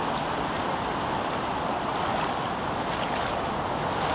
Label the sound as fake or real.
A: real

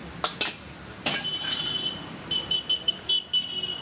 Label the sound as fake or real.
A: real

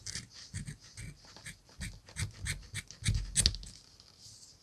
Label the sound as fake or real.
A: real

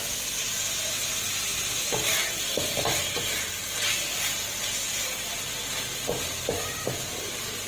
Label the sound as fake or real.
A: real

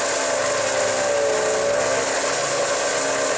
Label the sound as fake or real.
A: real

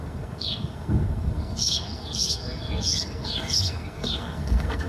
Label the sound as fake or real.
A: fake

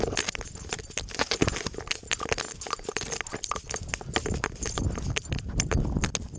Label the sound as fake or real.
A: real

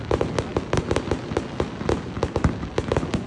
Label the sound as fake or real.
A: real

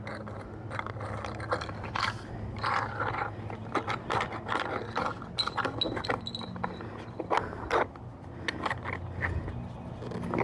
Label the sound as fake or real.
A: real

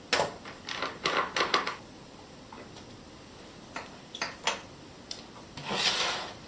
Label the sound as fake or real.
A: real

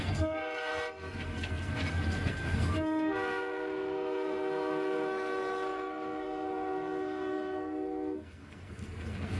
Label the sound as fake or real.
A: fake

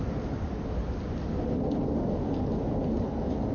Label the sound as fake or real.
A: real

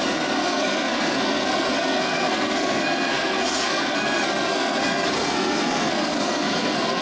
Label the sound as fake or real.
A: fake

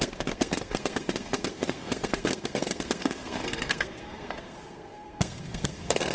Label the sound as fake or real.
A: fake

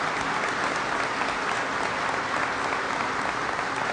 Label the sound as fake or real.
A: real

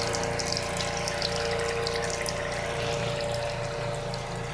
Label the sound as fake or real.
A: real